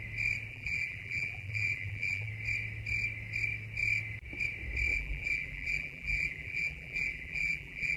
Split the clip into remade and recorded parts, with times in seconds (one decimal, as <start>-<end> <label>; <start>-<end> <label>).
0.0-0.5 recorded; 0.5-2.3 remade; 2.3-4.9 recorded; 4.9-8.0 remade